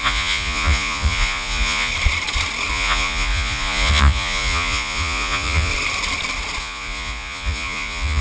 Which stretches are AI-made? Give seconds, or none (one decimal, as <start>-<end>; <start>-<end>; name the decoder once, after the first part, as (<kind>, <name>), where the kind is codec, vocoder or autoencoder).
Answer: 0.0-1.9 (vocoder, Vocos); 2.7-5.7; 6.6-8.2